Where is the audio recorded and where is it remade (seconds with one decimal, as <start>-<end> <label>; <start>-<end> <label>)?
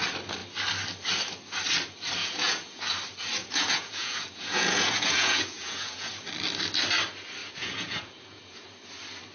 0.0-2.2 recorded; 2.2-2.8 remade; 2.8-3.4 recorded; 3.4-6.1 remade; 6.1-7.4 recorded; 7.4-8.7 remade; 8.7-9.3 recorded